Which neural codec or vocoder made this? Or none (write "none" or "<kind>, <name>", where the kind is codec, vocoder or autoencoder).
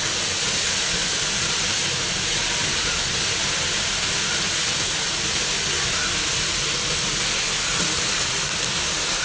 none